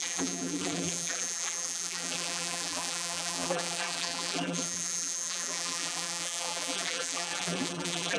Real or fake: fake